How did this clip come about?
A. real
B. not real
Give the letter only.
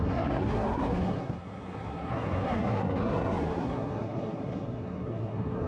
B